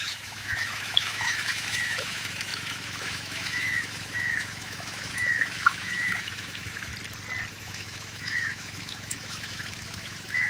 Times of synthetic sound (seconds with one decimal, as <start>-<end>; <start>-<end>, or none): 0.0-6.9; 7.5-10.5